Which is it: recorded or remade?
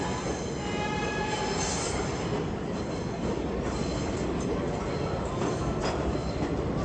recorded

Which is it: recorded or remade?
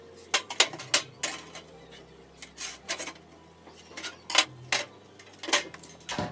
recorded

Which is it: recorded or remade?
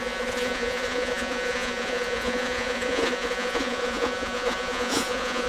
remade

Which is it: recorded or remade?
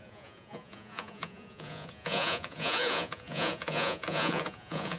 remade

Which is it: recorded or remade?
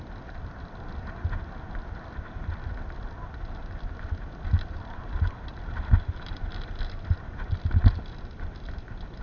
recorded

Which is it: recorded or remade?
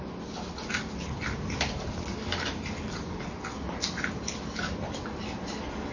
recorded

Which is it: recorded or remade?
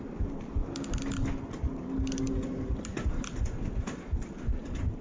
recorded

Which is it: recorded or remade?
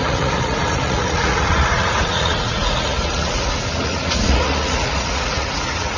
remade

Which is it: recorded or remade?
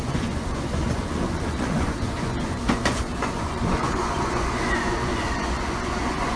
remade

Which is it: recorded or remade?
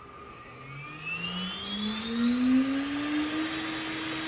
recorded